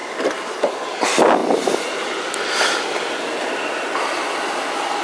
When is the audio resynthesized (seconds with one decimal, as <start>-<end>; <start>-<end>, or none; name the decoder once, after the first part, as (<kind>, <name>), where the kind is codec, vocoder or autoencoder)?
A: 0.0-0.6 (vocoder, BigVGAN v2)